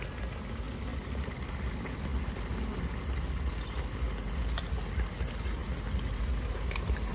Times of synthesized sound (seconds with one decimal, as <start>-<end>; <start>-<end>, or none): none